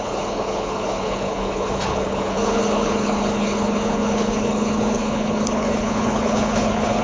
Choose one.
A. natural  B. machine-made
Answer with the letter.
B